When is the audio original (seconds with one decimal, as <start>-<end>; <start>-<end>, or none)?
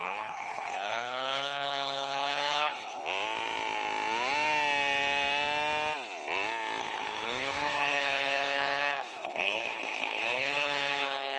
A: 3.0-6.8